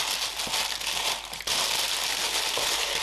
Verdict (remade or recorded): recorded